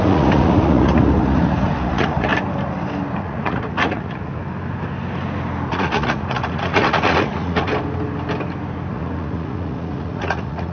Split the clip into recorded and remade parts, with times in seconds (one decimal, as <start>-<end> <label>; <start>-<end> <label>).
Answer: 0.0-2.3 remade; 2.3-3.2 recorded; 3.2-4.3 remade; 4.3-5.7 recorded; 5.7-7.7 remade; 7.7-8.9 recorded; 8.9-10.7 remade